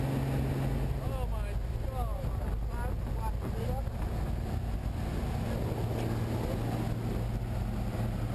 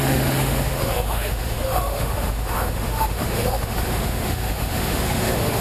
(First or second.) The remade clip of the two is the second